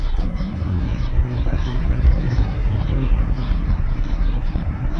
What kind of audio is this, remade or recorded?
remade